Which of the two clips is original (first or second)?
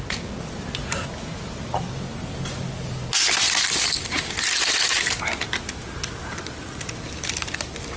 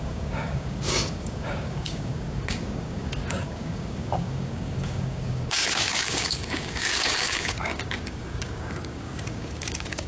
first